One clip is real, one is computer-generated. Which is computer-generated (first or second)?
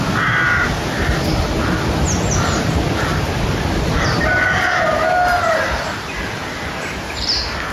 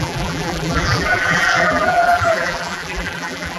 second